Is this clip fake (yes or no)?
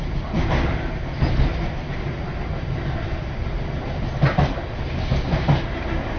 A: no